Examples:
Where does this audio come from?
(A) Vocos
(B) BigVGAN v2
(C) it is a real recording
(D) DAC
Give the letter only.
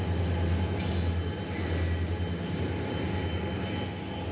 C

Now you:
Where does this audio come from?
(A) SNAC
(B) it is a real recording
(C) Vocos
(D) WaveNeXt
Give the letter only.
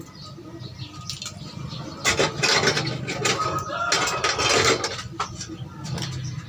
B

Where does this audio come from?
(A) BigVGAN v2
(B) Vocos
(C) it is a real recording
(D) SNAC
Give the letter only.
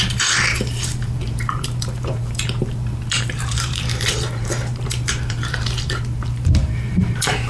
A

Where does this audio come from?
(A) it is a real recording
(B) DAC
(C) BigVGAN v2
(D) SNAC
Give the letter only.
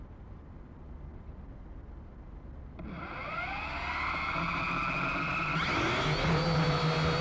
A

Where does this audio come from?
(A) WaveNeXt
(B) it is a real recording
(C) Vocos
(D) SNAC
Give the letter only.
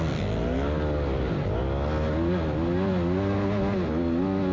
B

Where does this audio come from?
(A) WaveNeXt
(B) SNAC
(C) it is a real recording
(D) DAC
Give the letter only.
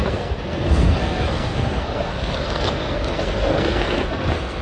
B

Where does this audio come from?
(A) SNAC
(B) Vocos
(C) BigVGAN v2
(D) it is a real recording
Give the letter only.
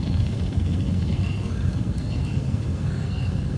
A